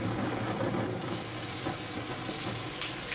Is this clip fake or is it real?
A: real